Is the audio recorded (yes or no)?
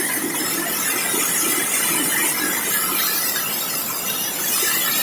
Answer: yes